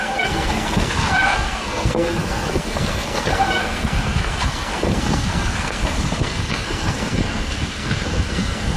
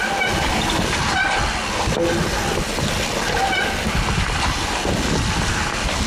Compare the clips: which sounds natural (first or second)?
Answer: second